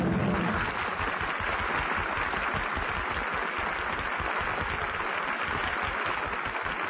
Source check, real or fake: real